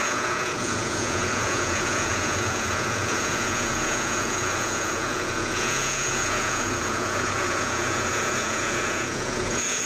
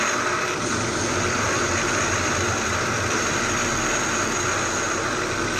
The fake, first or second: first